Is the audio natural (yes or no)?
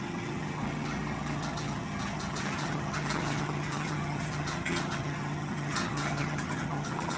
no